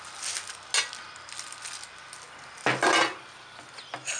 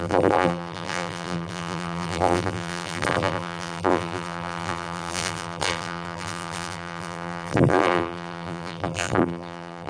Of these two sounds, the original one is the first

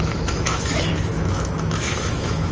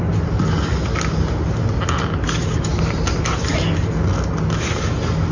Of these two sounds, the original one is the second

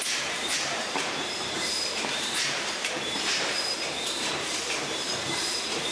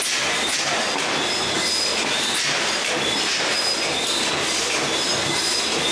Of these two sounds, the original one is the second